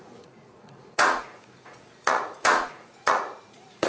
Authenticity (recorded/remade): remade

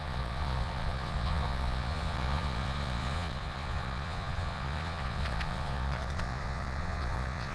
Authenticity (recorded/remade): remade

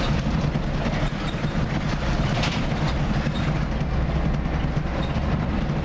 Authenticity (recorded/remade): recorded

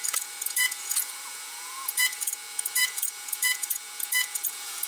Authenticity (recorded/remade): remade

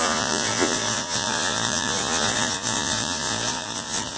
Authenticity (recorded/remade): remade